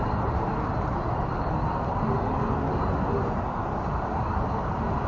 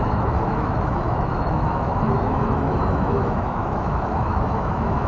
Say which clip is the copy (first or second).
second